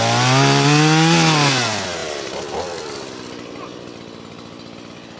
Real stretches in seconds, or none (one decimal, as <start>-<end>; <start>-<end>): 0.0-5.2